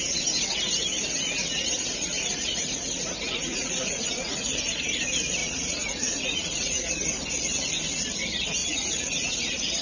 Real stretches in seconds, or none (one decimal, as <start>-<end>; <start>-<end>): 0.0-2.3; 3.0-3.5; 4.6-5.4; 6.8-8.6; 9.3-9.8